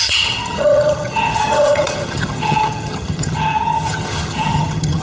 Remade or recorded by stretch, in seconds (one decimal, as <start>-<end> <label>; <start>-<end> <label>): 0.0-5.0 remade